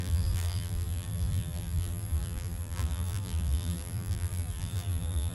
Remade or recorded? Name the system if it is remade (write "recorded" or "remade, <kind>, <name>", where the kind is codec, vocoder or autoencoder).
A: remade, vocoder, BigVGAN v2